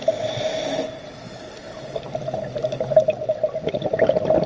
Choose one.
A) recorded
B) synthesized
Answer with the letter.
A